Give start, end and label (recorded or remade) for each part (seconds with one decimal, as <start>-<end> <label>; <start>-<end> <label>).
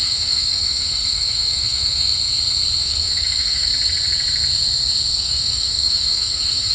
0.0-2.1 remade; 2.1-2.8 recorded; 2.8-3.7 remade; 3.7-5.2 recorded; 5.2-6.7 remade